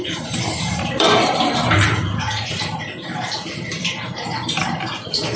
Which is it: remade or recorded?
remade